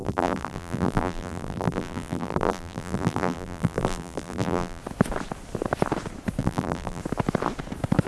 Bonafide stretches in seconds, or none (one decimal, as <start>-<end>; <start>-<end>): 4.8-6.4; 7.0-8.1